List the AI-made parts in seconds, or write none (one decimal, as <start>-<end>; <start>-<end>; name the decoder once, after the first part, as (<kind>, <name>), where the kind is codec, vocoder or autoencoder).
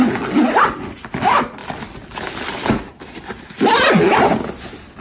none